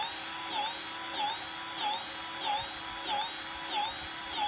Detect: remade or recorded recorded